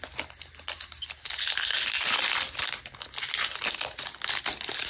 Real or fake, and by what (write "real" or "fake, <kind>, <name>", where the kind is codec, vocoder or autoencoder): real